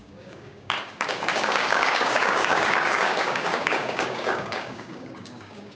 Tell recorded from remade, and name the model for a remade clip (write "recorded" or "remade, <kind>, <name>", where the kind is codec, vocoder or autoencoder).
remade, codec, DAC